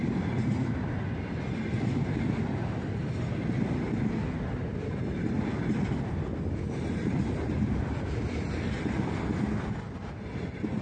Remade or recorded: recorded